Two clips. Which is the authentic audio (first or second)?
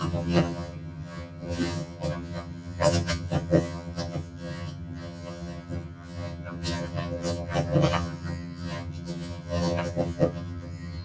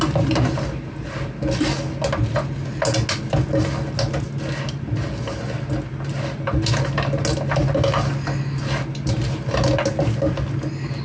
second